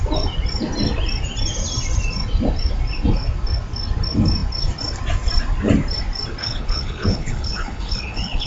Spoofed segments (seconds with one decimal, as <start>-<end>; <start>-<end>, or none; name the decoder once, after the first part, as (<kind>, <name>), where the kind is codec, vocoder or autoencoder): 6.4-8.5 (codec, HILCodec)